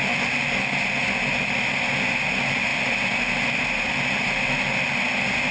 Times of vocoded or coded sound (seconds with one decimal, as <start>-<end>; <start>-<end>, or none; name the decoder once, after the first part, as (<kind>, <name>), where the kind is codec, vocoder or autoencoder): none